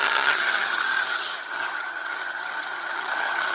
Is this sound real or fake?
fake